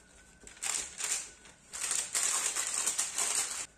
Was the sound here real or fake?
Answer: real